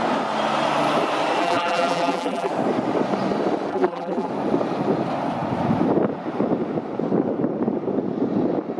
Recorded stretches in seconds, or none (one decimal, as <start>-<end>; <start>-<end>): 0.0-1.4; 2.5-3.7; 4.3-8.8